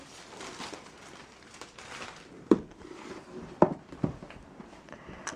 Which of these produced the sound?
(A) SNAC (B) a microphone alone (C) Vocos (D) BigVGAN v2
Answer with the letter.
D